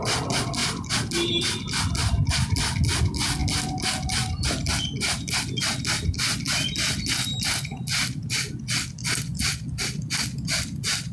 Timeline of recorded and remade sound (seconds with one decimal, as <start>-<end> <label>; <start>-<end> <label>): 0.0-11.1 recorded